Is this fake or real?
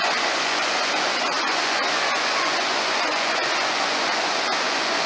fake